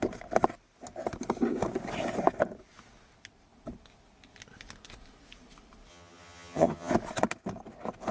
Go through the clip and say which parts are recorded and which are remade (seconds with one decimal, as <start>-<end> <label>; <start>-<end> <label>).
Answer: 0.0-5.9 recorded; 5.9-6.9 remade; 6.9-8.1 recorded